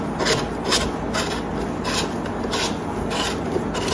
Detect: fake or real real